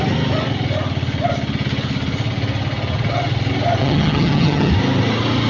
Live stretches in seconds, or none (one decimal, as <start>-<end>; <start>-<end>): 0.0-3.8; 4.7-5.5